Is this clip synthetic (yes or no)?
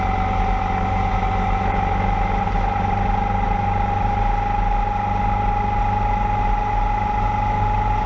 no